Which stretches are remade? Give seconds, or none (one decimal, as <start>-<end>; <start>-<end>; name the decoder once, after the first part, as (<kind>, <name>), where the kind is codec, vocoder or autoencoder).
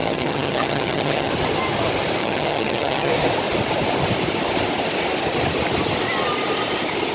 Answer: 0.0-1.3 (vocoder, HiFi-GAN); 2.2-3.1